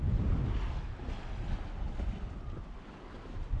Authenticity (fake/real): real